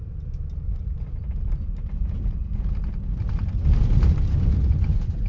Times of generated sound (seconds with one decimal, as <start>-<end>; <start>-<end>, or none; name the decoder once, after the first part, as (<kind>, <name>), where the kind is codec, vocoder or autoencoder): none